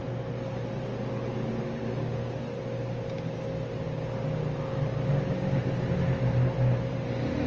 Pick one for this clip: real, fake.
real